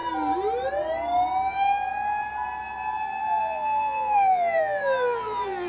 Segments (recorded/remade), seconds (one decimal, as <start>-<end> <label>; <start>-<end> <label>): 0.0-3.4 recorded; 3.4-5.7 remade